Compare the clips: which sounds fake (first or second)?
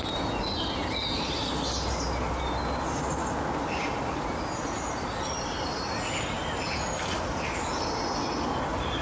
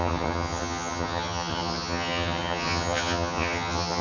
second